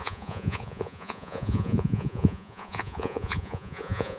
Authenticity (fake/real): fake